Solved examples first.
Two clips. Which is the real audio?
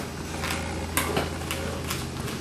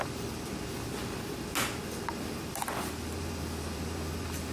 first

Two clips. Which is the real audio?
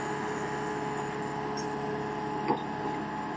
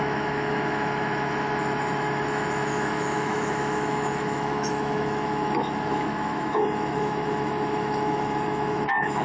first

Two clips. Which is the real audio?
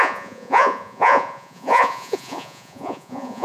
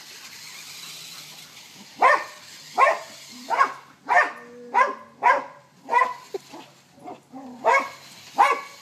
second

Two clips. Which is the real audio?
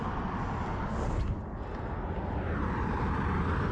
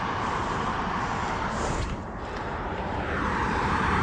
first